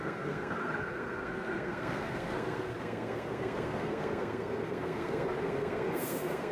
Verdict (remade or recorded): remade